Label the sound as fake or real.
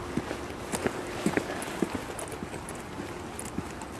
real